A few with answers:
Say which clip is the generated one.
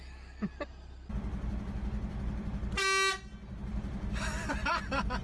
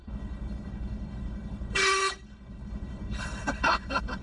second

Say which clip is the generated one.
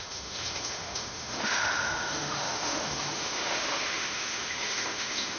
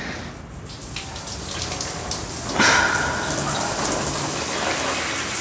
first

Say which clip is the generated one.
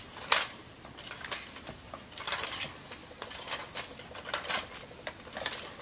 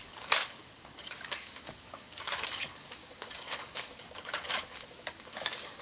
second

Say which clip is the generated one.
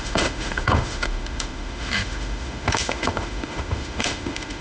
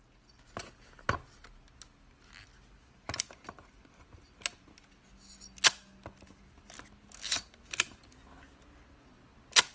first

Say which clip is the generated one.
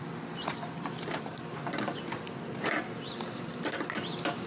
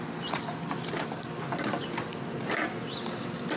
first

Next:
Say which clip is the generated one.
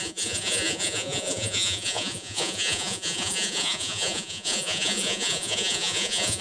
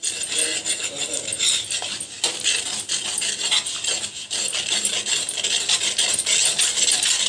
first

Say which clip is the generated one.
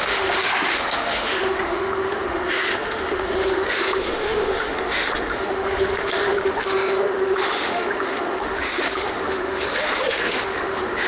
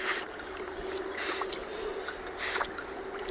first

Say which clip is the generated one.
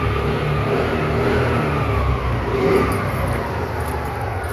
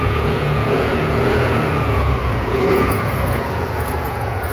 second